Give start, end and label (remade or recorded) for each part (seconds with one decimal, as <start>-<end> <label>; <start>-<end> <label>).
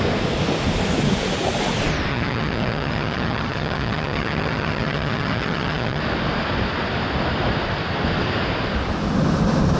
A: 0.0-2.1 recorded; 2.1-6.0 remade; 6.0-9.8 recorded